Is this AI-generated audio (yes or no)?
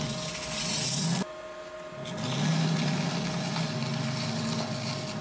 no